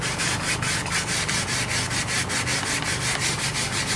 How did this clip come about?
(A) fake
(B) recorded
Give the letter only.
B